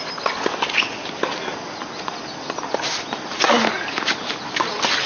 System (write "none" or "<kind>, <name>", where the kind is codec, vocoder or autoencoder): none